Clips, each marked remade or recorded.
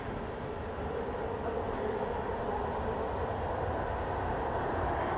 recorded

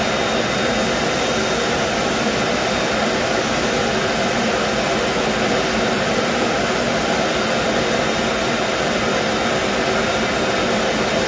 recorded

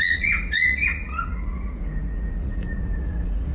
remade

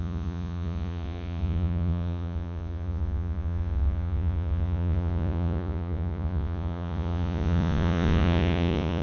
remade